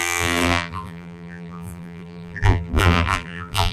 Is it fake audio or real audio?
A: fake